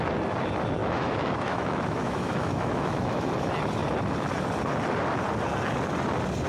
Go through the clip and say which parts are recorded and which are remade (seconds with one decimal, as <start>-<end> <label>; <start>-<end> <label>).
0.0-0.8 recorded; 0.8-3.3 remade; 3.3-6.5 recorded

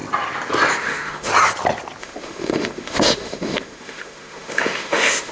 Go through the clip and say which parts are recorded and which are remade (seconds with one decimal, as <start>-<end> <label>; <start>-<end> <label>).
0.0-0.8 recorded; 0.8-1.3 remade; 1.3-2.0 recorded; 2.0-5.3 remade

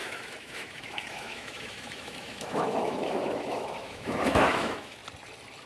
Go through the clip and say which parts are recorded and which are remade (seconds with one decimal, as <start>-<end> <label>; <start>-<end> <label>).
0.0-5.0 remade; 5.0-5.7 recorded

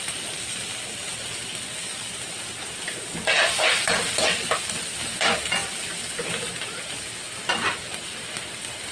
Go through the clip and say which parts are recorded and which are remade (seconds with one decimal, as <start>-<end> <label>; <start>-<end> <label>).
0.0-8.9 recorded

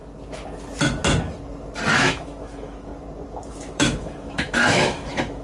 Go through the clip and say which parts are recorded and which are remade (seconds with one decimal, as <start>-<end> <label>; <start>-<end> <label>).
0.0-1.9 recorded; 1.9-2.9 remade; 2.9-3.5 recorded; 3.5-5.4 remade

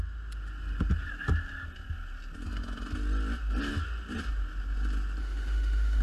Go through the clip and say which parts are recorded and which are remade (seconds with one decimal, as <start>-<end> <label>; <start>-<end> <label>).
0.0-5.2 recorded; 5.2-6.0 remade

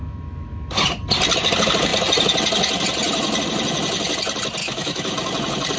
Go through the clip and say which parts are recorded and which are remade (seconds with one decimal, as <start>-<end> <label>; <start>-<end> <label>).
0.0-0.7 remade; 0.7-4.6 recorded; 4.6-5.1 remade; 5.1-5.8 recorded